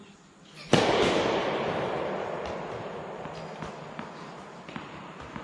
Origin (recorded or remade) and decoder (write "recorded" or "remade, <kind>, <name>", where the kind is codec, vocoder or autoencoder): recorded